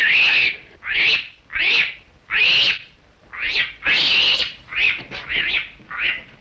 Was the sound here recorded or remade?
recorded